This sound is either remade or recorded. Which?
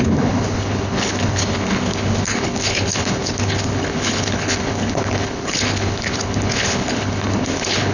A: remade